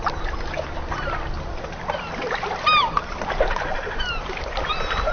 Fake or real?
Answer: real